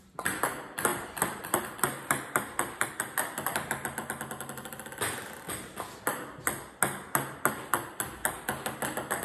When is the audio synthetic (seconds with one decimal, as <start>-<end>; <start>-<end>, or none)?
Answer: 0.9-2.9